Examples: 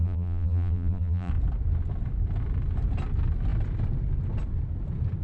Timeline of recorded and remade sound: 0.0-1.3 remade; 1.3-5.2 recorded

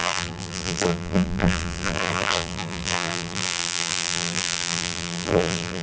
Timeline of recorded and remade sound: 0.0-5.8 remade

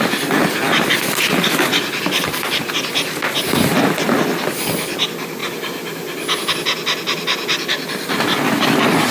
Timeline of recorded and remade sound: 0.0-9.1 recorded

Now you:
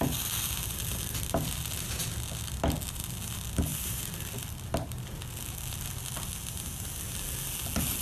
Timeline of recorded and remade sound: 0.0-3.7 recorded; 3.7-5.2 remade; 5.2-8.0 recorded

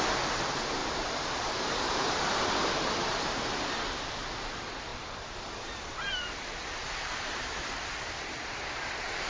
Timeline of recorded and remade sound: 0.0-0.8 recorded; 0.8-3.3 remade; 3.3-4.9 recorded; 4.9-7.8 remade; 7.8-9.3 recorded